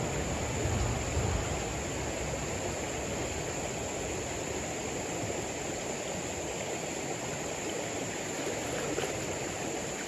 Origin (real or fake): real